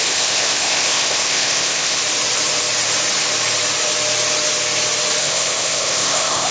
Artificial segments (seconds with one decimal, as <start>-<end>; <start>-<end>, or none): 0.0-2.0; 5.2-6.5